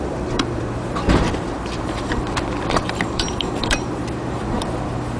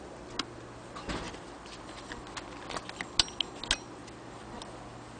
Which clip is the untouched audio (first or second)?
second